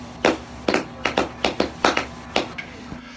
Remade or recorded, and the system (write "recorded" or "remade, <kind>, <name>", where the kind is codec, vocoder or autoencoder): recorded